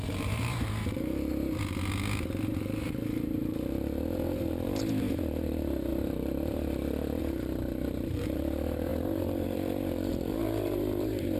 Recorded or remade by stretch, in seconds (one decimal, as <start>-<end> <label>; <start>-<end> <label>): 0.0-1.3 remade; 1.3-2.5 recorded; 2.5-5.9 remade; 5.9-7.2 recorded; 7.2-11.4 remade